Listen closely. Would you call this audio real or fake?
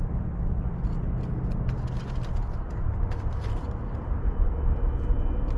real